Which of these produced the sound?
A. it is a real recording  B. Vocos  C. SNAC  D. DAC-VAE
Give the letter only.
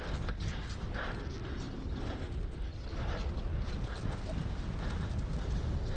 A